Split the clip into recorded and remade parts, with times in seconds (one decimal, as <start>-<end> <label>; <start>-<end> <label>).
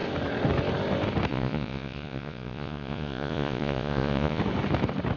0.0-1.3 recorded; 1.3-4.4 remade; 4.4-5.2 recorded